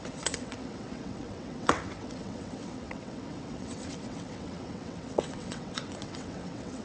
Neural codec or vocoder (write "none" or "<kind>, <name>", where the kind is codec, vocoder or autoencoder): vocoder, WaveNeXt